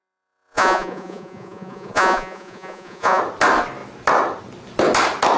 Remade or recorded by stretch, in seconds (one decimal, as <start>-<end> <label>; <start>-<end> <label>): 0.0-3.2 remade; 3.2-5.4 recorded